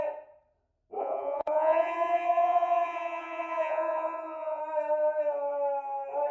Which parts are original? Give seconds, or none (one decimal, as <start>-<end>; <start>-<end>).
0.0-1.0; 4.6-6.3